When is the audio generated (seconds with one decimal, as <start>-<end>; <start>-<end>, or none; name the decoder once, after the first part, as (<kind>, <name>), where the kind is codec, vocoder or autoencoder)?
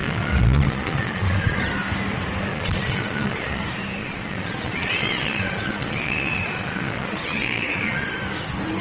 0.0-1.6 (vocoder, Vocos); 2.5-3.6; 4.0-8.1